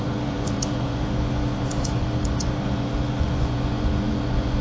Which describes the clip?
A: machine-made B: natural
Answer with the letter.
A